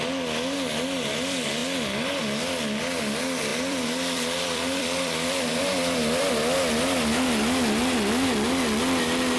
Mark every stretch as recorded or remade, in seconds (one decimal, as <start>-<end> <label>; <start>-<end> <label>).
0.0-3.5 recorded; 3.5-6.3 remade; 6.3-9.4 recorded